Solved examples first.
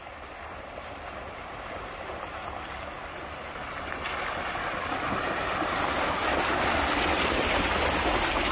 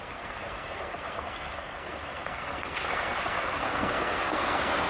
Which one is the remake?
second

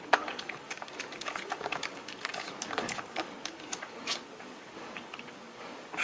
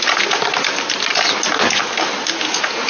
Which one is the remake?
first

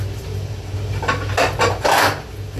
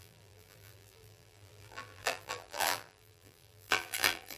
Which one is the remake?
second